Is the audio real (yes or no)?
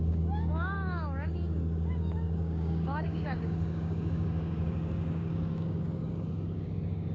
no